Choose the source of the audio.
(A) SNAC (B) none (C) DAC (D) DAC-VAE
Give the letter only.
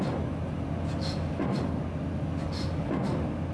B